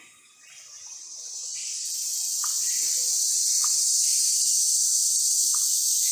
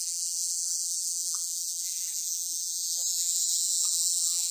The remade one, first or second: second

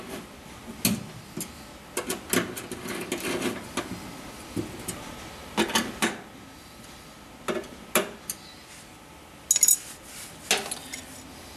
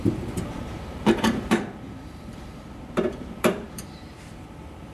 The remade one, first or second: second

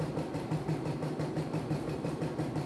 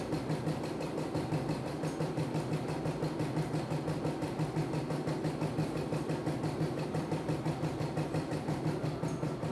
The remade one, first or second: first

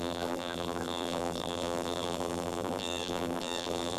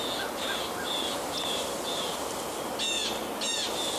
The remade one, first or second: first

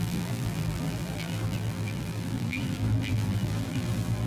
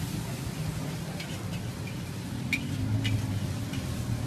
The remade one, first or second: first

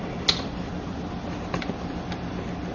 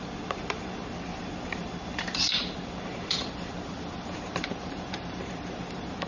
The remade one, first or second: second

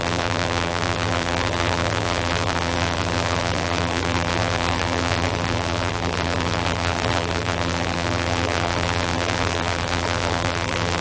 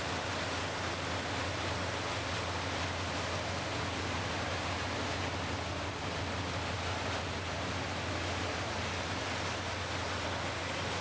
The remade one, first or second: first